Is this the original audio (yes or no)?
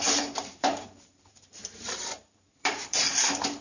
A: no